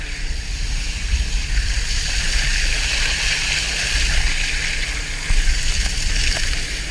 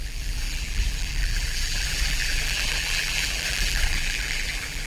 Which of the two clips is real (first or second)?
first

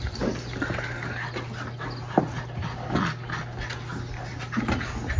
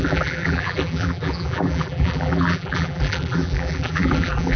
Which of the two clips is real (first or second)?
first